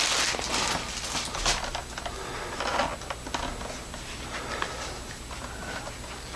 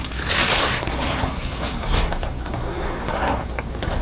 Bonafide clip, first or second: first